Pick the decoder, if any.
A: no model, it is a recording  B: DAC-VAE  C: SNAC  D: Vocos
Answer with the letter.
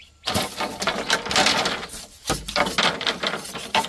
A